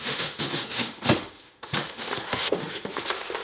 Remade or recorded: remade